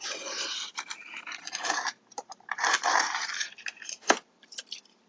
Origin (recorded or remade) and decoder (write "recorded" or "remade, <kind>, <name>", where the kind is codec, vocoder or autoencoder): remade, vocoder, BigVGAN v2